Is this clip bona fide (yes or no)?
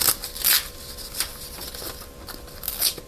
yes